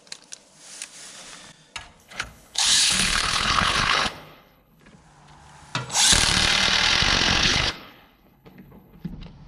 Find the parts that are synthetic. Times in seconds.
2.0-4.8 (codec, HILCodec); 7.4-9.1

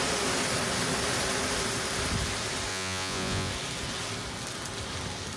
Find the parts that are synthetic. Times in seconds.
2.7-3.5 (vocoder, Vocos)

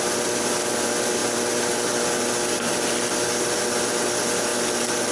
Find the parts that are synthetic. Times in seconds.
none

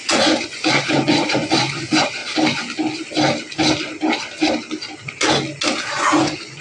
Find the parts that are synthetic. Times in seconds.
0.0-2.2 (vocoder, Vocos); 5.9-6.6

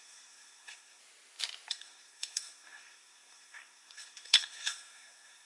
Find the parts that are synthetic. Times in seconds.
0.0-1.0 (codec, SNAC); 1.7-5.5

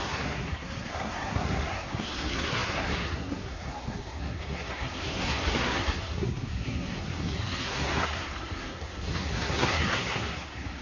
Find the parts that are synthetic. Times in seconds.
0.0-10.8 (codec, SNAC)